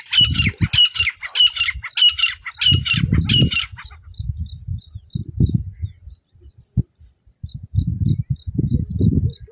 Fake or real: real